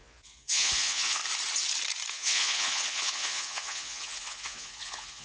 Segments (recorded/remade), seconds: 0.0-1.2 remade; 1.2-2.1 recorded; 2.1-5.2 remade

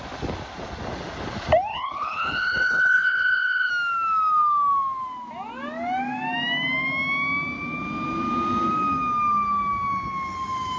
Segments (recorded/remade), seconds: 0.0-1.7 recorded; 1.7-3.7 remade; 3.7-10.8 recorded

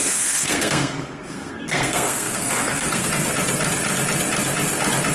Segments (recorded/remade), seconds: 0.0-3.1 remade; 3.1-5.1 recorded

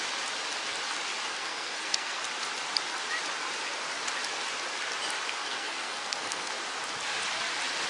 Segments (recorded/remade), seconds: 0.0-1.3 recorded; 1.3-2.2 remade; 2.2-5.4 recorded; 5.4-6.5 remade; 6.5-7.9 recorded